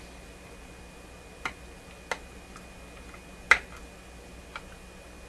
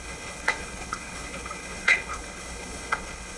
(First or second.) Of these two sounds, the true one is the first